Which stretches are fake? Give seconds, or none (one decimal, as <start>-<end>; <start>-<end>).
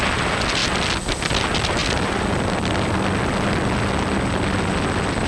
none